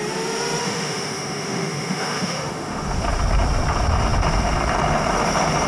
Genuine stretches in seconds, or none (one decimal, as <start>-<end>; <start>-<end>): 0.0-0.6; 3.0-5.7

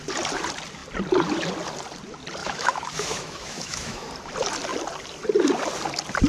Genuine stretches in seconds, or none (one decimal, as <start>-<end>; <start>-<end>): 0.0-2.4; 4.1-6.3

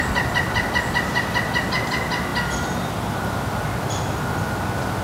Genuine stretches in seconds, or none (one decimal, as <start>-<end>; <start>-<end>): 0.0-5.0